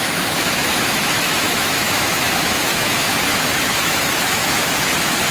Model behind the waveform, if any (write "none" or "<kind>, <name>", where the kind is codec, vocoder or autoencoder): autoencoder, DAC-VAE